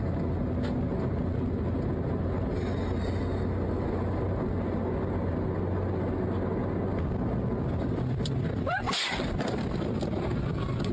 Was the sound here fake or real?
real